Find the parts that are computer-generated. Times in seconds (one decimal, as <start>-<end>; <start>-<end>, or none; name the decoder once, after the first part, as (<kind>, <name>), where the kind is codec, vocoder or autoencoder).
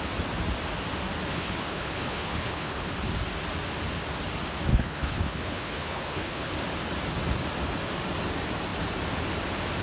1.3-2.9 (codec, HILCodec); 4.7-6.5